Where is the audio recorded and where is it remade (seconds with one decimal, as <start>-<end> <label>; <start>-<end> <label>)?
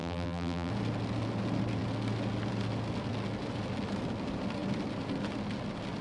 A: 0.0-0.7 remade; 0.7-6.0 recorded